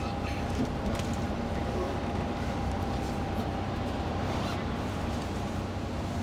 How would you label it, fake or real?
real